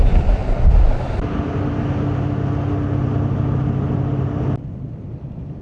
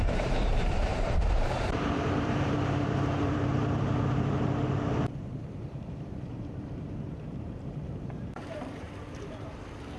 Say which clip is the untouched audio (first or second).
first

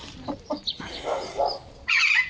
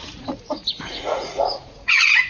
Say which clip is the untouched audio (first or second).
first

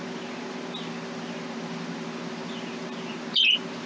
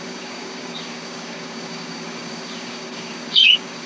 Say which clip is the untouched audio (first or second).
first